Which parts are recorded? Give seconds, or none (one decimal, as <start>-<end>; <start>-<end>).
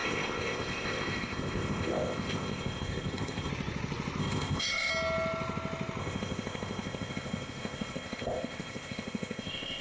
3.5-4.2; 4.9-6.0